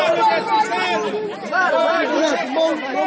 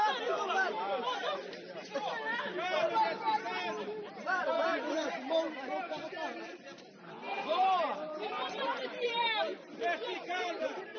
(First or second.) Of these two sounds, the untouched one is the first